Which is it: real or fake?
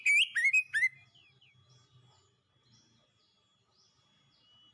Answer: real